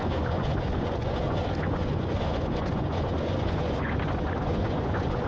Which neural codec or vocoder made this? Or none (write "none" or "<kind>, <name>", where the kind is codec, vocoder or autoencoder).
vocoder, Vocos